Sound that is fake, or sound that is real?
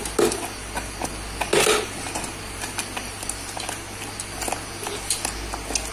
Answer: real